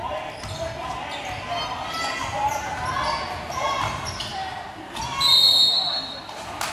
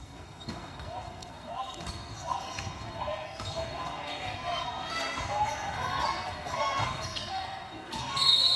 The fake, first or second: second